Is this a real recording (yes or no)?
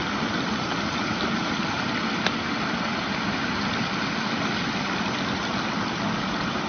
yes